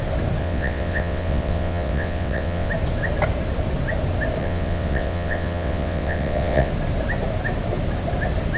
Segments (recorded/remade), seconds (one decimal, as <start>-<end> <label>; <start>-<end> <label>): 0.0-0.4 recorded; 0.4-2.7 remade; 2.7-4.4 recorded; 4.4-6.7 remade; 6.7-8.6 recorded